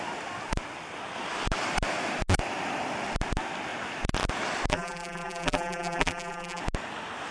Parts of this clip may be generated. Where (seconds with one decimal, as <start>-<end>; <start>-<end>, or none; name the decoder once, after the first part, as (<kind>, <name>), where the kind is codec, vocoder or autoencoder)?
4.7-6.6 (vocoder, BigVGAN v2)